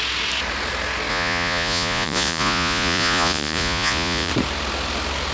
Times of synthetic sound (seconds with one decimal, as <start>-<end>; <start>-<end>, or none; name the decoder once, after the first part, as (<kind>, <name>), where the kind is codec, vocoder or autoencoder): 1.1-4.3 (vocoder, Vocos)